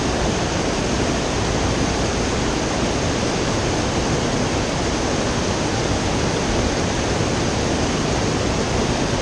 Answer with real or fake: real